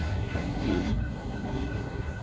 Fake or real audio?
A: fake